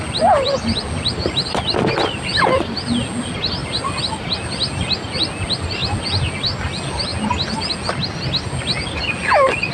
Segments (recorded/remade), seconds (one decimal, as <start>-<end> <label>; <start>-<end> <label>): 0.0-9.7 recorded